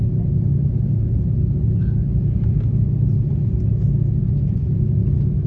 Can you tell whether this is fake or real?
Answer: real